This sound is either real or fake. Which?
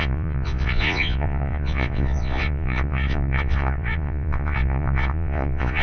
fake